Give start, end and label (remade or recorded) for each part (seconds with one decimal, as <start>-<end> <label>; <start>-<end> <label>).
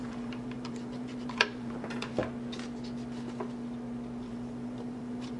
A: 0.0-2.2 remade; 2.2-4.2 recorded; 4.2-5.4 remade